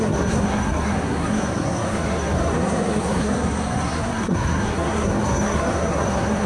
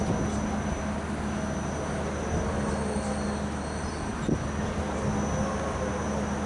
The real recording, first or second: second